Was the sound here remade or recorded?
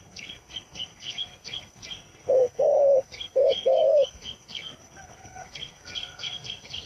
remade